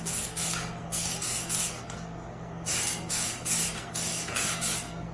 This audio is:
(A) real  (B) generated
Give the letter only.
B